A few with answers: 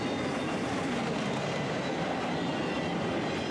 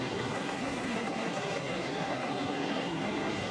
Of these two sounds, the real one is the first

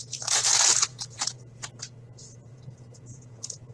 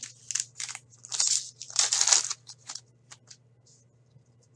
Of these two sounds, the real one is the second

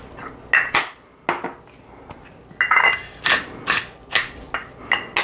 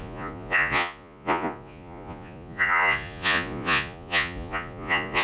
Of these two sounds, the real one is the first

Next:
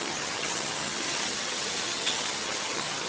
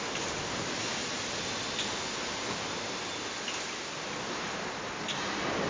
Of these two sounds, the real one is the second